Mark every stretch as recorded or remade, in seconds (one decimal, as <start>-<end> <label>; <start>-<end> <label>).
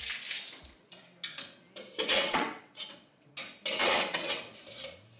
0.0-2.1 recorded; 2.1-3.3 remade; 3.3-3.8 recorded; 3.8-4.4 remade; 4.4-5.2 recorded